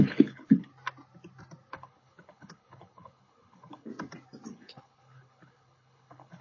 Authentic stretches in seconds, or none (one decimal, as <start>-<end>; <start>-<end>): 0.7-1.7; 3.9-4.5